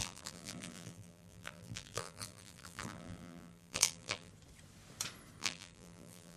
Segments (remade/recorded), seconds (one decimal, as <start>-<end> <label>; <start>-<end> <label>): 0.0-4.3 remade; 4.3-5.4 recorded; 5.4-6.4 remade